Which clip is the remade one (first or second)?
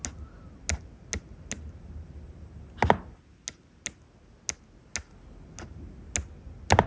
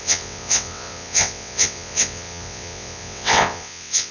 second